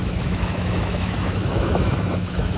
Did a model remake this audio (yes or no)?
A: yes